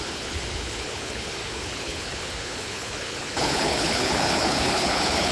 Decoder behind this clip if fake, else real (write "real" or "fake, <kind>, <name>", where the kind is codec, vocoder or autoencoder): fake, codec, HILCodec